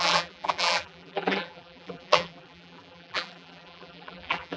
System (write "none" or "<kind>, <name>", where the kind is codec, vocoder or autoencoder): vocoder, BigVGAN v2